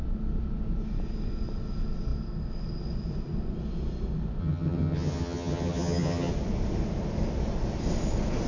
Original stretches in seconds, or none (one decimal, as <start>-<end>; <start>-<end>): 0.0-4.4; 6.3-8.5